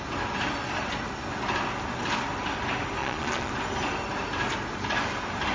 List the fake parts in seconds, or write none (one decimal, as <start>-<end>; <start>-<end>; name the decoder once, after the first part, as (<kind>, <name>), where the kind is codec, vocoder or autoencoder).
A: 3.0-3.5 (vocoder, Vocos)